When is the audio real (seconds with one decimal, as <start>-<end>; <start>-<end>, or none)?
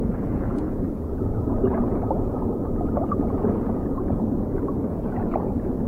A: none